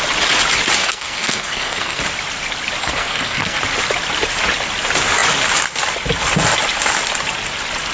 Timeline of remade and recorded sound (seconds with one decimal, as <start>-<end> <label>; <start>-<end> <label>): 0.0-0.8 recorded; 0.8-2.0 remade; 2.0-2.8 recorded; 2.8-3.6 remade; 3.6-7.9 recorded